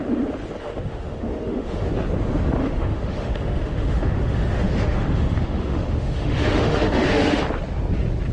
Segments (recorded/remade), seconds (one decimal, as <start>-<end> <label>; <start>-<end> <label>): 0.0-0.6 recorded; 0.6-1.9 remade; 1.9-2.6 recorded; 2.6-7.4 remade; 7.4-8.3 recorded